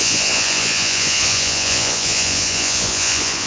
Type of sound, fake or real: fake